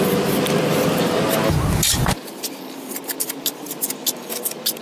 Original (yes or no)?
yes